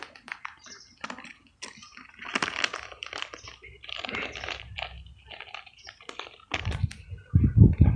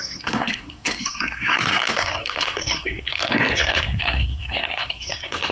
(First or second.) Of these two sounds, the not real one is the second